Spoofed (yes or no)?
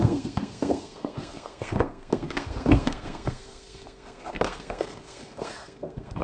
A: yes